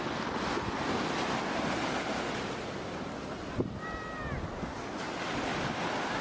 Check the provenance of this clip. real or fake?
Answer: real